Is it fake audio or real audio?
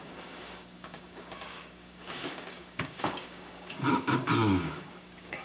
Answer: fake